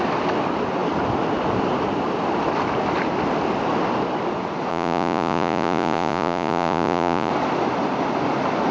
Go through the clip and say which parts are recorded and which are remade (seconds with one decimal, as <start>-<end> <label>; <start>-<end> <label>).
0.0-4.7 recorded; 4.7-7.3 remade; 7.3-8.7 recorded

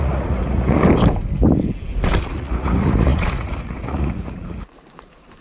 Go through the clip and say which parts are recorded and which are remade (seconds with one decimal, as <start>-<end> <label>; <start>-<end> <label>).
0.0-0.8 remade; 0.8-2.2 recorded; 2.2-5.4 remade

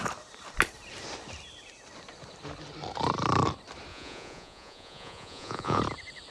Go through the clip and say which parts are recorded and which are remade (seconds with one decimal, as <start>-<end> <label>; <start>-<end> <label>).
0.0-3.9 recorded; 3.9-5.8 remade; 5.8-6.3 recorded

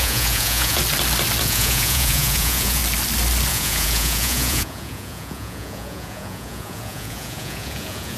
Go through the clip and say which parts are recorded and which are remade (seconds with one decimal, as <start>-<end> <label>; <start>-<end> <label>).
0.0-0.8 remade; 0.8-1.4 recorded; 1.4-2.8 remade; 2.8-3.5 recorded; 3.5-8.2 remade

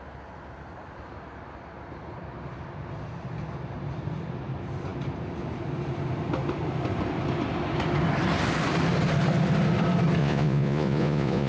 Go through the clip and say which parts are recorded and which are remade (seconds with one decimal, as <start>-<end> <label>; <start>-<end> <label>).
0.0-10.2 recorded; 10.2-11.5 remade

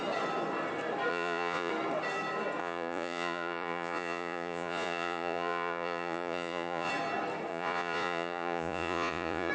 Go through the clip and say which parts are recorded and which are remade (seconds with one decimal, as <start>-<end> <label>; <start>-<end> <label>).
0.0-1.1 recorded; 1.1-1.7 remade; 1.7-2.6 recorded; 2.6-6.9 remade; 6.9-7.5 recorded; 7.5-9.5 remade

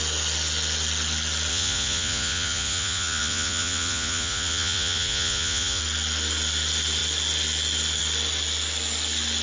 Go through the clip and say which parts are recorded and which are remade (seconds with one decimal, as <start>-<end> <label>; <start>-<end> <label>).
0.0-1.5 recorded; 1.5-5.8 remade; 5.8-9.4 recorded

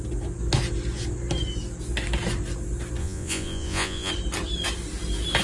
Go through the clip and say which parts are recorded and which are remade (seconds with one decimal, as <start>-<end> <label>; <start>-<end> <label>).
0.0-3.0 recorded; 3.0-4.1 remade; 4.1-5.4 recorded